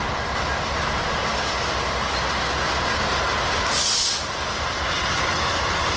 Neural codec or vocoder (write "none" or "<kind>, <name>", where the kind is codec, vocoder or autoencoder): none